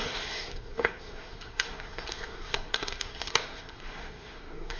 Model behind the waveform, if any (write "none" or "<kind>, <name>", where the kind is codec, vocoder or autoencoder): codec, SNAC